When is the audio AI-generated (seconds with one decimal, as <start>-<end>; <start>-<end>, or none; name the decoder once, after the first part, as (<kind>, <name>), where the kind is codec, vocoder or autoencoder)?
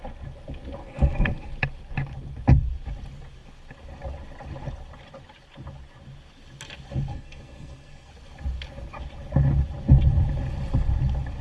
0.8-1.5 (codec, SNAC); 7.1-8.1